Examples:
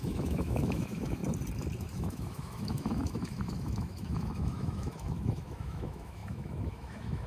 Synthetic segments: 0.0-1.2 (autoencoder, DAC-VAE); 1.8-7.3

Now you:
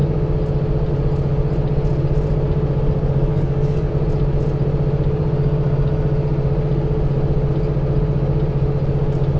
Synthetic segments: 3.3-3.9 (codec, DAC)

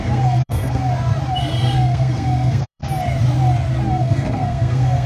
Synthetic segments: 0.0-0.8 (codec, SNAC); 1.3-2.8; 3.9-5.1